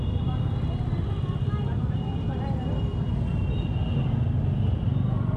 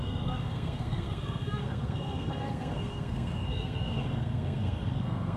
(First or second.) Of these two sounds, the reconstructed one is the second